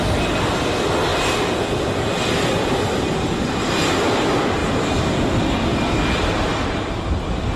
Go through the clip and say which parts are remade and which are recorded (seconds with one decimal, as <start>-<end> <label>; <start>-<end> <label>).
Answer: 0.0-1.1 recorded; 1.1-3.0 remade; 3.0-4.6 recorded; 4.6-5.3 remade; 5.3-7.6 recorded